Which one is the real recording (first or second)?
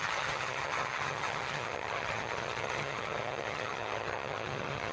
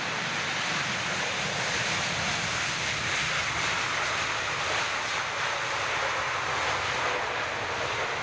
second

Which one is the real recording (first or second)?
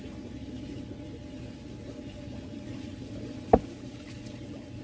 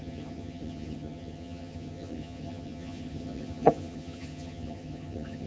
first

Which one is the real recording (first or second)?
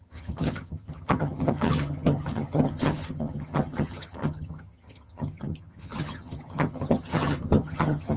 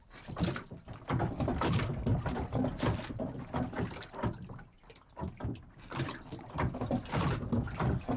second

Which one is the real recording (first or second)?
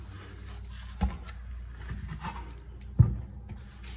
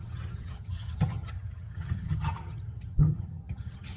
first